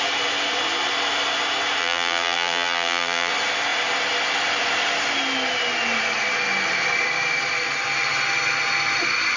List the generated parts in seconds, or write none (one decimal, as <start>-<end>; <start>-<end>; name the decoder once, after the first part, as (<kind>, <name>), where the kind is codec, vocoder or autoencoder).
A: 1.8-3.3 (vocoder, BigVGAN v2)